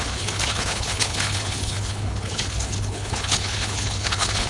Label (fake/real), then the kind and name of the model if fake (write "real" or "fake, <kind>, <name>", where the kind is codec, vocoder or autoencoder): fake, codec, HILCodec